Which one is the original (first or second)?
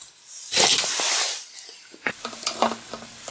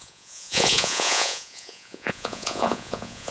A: first